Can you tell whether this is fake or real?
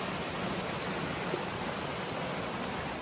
real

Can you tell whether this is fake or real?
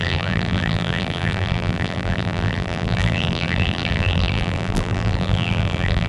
fake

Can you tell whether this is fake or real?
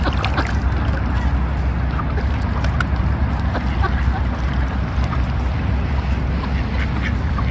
real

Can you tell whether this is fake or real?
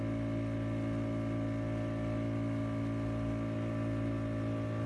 real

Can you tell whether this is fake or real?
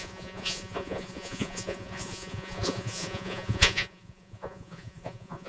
fake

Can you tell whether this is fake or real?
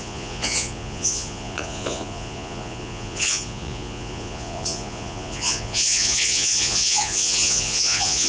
fake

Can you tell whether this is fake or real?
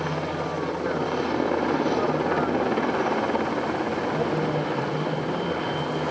real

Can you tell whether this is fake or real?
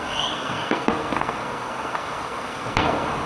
fake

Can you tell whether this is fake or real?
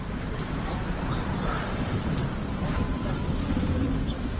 fake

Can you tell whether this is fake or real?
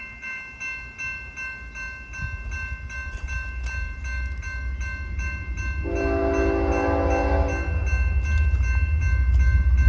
real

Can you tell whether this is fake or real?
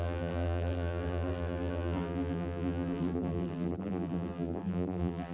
fake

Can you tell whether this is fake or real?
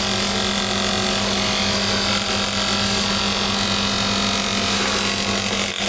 real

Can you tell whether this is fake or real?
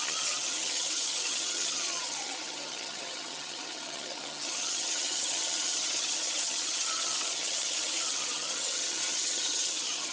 fake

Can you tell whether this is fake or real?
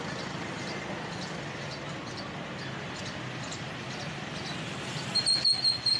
real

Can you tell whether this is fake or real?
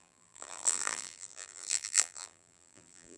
fake